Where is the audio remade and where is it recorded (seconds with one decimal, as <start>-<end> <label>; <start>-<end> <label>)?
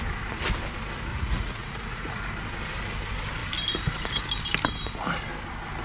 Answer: 0.0-1.1 recorded; 1.1-2.3 remade; 2.3-5.8 recorded